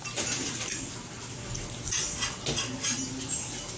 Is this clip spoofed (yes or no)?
no